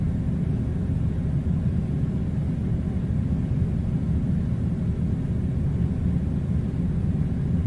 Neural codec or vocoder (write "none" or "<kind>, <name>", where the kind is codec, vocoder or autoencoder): none